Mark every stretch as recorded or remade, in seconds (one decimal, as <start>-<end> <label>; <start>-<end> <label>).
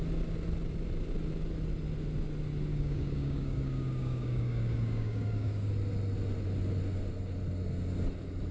0.0-2.7 recorded; 2.7-5.7 remade; 5.7-8.5 recorded